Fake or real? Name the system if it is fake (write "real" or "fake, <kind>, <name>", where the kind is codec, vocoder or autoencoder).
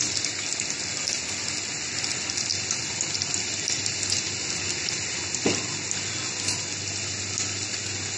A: real